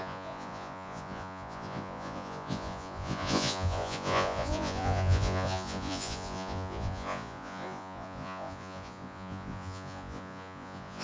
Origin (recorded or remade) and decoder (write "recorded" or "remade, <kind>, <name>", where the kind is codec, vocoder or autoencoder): remade, vocoder, Vocos